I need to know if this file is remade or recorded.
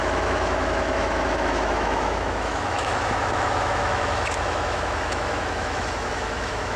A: remade